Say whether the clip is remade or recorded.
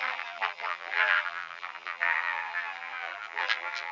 remade